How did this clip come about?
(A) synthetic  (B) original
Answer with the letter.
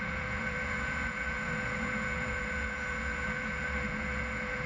A